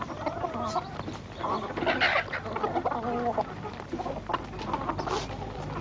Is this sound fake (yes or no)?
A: no